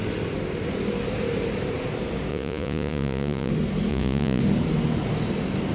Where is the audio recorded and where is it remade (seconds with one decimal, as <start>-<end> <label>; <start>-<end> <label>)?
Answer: 0.0-2.3 recorded; 2.3-3.5 remade; 3.5-3.9 recorded; 3.9-4.4 remade; 4.4-5.7 recorded